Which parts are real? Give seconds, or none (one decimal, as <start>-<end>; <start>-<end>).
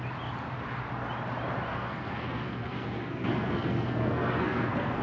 0.0-1.7